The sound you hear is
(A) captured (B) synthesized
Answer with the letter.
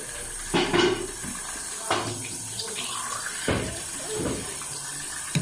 A